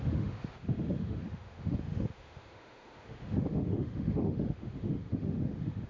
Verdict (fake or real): fake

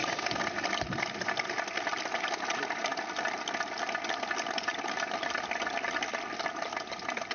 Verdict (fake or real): real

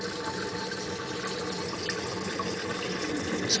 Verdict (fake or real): real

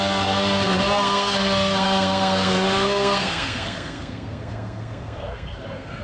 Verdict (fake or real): fake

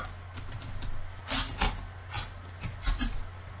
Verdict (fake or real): real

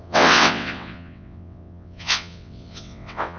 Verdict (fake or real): fake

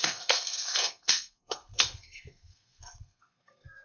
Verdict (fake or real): fake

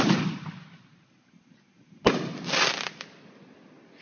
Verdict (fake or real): real